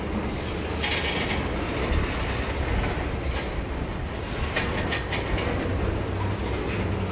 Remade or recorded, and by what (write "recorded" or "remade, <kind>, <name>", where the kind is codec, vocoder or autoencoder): recorded